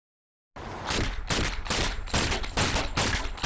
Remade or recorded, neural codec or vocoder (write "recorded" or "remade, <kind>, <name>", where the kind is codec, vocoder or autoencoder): recorded